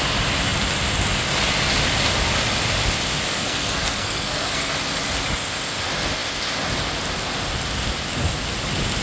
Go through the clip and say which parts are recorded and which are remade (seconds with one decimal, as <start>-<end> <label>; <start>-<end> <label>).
0.0-3.3 recorded; 3.3-4.7 remade; 4.7-9.0 recorded

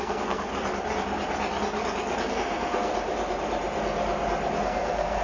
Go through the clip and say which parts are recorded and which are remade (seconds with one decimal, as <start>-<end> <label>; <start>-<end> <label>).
0.0-0.5 remade; 0.5-2.3 recorded; 2.3-2.9 remade; 2.9-4.6 recorded; 4.6-5.2 remade